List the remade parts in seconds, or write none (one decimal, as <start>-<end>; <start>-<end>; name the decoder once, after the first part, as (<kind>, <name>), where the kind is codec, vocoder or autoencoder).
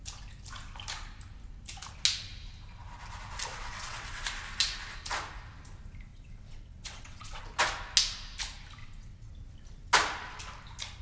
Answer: 3.5-4.2 (vocoder, WaveNeXt); 6.1-7.4; 8.8-9.3